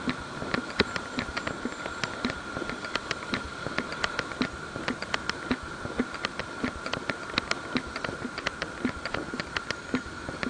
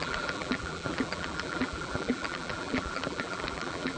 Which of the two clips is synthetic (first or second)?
second